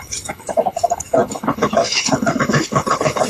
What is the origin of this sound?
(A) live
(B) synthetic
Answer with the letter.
B